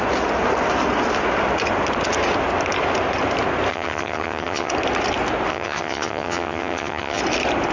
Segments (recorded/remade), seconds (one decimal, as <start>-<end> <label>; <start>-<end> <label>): 0.0-3.7 recorded; 3.7-4.7 remade; 4.7-5.5 recorded; 5.5-7.2 remade; 7.2-7.7 recorded